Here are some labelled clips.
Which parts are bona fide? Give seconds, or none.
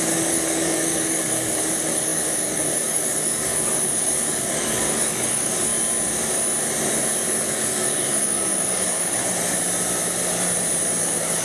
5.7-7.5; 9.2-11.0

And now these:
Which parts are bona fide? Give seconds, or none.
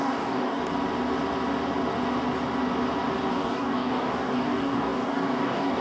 0.6-3.3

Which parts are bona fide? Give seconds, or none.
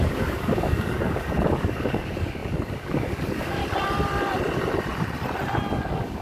3.6-5.8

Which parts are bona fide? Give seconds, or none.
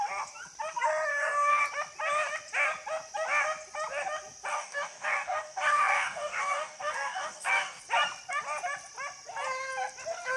0.0-1.1; 1.6-4.5; 7.8-10.4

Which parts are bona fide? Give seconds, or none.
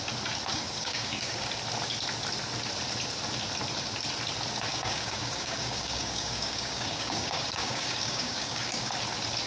0.0-0.5; 1.4-4.7; 8.9-9.5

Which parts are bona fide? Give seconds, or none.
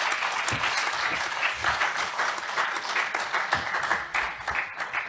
0.0-1.1; 2.3-5.1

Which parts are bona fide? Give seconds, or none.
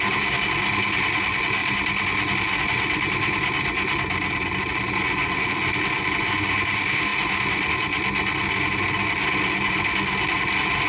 0.0-10.9